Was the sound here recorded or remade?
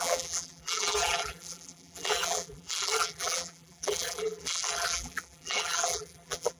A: remade